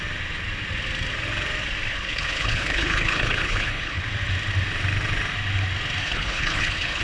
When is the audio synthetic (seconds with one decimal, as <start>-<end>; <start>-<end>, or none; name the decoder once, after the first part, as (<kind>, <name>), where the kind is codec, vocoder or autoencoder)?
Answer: 1.9-4.0 (codec, HILCodec); 6.0-7.0